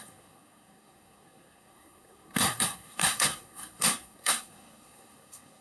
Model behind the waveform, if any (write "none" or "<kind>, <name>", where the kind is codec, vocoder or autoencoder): codec, SNAC